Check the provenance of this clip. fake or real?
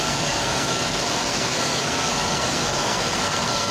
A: fake